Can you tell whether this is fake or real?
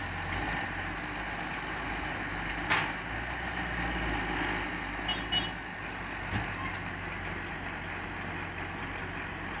real